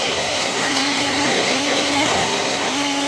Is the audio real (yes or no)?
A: no